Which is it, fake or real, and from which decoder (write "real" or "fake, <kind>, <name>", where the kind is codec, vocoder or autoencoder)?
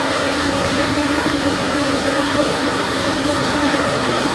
fake, codec, SNAC